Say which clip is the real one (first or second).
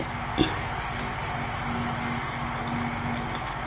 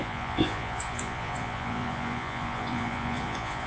first